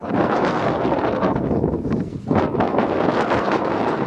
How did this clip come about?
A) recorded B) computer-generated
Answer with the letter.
B